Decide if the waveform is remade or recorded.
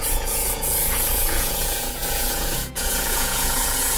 remade